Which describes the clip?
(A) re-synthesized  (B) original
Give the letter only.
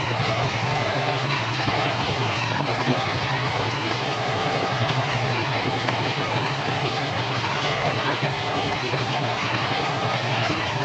A